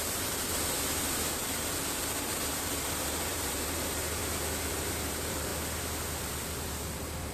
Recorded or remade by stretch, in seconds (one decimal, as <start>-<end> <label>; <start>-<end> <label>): 0.0-0.5 remade; 0.5-1.3 recorded; 1.3-4.2 remade; 4.2-4.7 recorded; 4.7-5.5 remade; 5.5-6.2 recorded; 6.2-7.3 remade